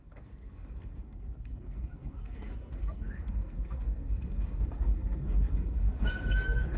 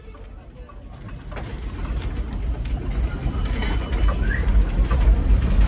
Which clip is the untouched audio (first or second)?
second